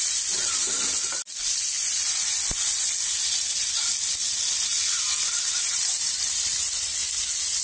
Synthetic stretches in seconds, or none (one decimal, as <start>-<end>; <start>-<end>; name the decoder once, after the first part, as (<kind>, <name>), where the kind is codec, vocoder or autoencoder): none